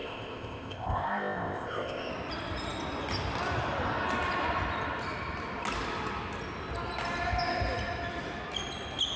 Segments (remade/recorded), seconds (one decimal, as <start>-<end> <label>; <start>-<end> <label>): 0.0-2.1 remade; 2.1-9.2 recorded